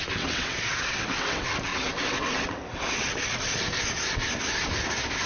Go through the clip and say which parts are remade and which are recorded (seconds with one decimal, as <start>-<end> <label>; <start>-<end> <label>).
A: 0.0-3.5 remade; 3.5-5.3 recorded